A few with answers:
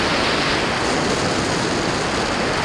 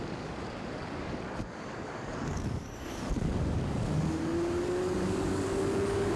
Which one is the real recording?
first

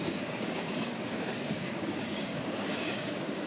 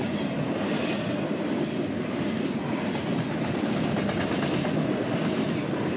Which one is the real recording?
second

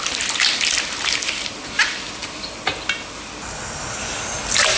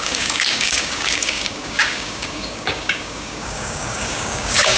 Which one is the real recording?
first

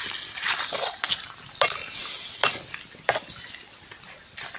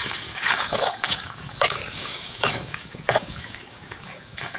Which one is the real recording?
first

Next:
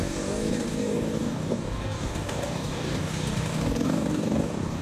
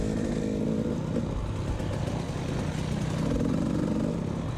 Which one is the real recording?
second